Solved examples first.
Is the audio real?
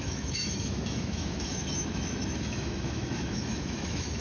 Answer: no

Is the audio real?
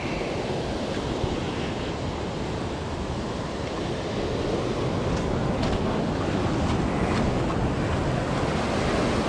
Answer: yes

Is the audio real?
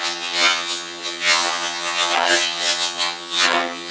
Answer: no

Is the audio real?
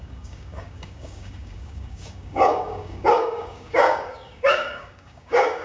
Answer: no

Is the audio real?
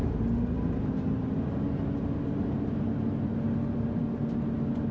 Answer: yes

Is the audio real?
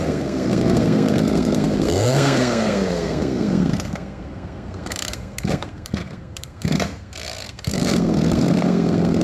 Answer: no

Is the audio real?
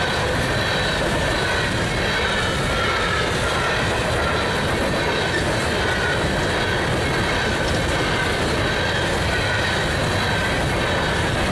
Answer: yes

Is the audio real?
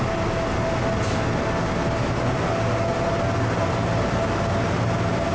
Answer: yes